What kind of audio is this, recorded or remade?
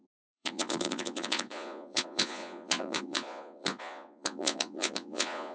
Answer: remade